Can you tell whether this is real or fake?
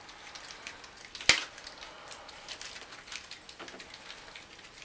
real